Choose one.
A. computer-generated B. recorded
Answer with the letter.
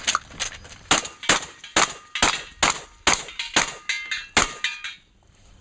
B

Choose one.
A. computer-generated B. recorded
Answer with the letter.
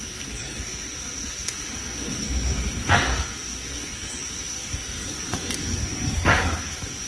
A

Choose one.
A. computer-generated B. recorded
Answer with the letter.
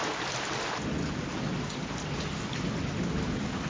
B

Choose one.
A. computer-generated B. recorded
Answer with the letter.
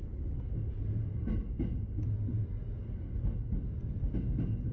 B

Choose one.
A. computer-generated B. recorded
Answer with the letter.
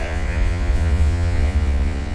A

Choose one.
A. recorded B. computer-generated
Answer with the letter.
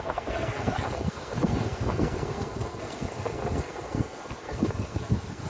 B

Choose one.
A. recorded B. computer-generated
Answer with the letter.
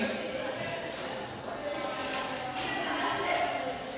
A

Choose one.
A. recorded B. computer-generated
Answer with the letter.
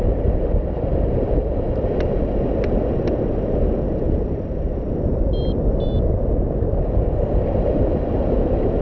A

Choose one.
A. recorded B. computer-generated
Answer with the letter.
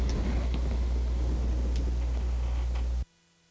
A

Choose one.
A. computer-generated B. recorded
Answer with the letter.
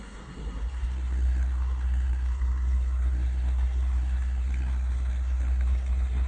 A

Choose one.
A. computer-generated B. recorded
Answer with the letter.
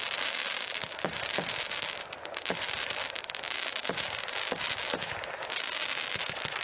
B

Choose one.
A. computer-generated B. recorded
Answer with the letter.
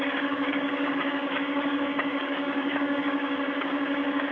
A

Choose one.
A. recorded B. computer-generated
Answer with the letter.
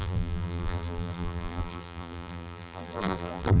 B